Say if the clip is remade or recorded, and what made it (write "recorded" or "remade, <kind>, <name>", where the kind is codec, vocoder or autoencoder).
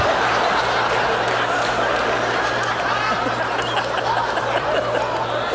recorded